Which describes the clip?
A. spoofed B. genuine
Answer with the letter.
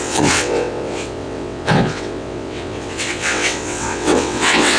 A